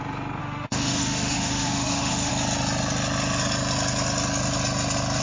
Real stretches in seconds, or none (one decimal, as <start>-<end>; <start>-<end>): 0.0-0.4; 2.3-5.2

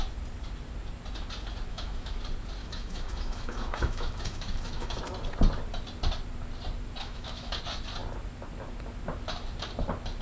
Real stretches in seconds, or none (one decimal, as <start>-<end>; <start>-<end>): 0.0-1.7; 2.2-2.6; 5.0-7.0; 7.6-10.2

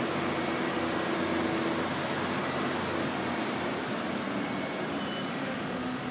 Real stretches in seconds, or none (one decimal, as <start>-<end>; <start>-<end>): 0.0-5.3

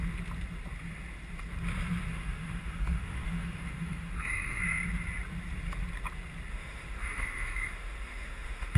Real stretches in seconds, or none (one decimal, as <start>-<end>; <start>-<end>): 0.0-2.1; 4.6-6.5

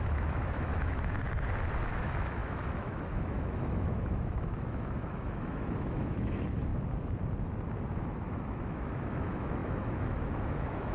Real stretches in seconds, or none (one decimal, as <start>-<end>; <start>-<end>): 1.2-2.0; 6.7-8.1